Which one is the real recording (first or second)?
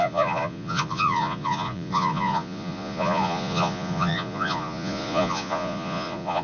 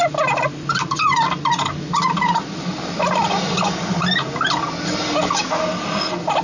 second